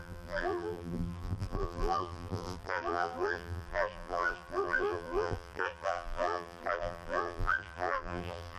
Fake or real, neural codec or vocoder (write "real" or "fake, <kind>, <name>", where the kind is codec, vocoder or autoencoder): fake, vocoder, BigVGAN v2